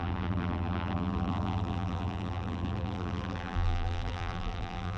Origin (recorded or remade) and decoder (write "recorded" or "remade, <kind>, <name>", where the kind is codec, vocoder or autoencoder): remade, vocoder, BigVGAN v2